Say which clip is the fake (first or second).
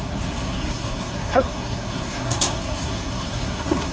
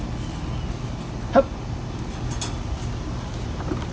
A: first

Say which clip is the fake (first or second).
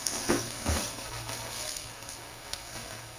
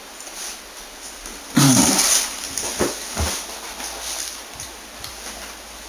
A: first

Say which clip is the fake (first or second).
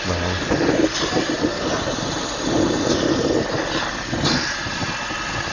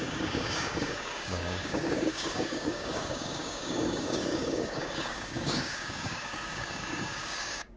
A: second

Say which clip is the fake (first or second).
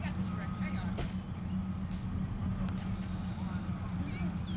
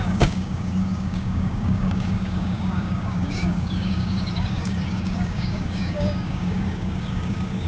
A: second